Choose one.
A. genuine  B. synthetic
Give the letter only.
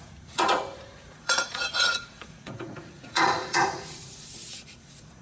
B